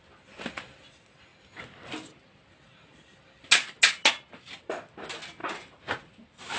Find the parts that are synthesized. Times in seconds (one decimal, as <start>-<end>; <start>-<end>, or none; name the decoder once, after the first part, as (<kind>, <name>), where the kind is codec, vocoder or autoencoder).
5.4-6.1 (vocoder, Vocos)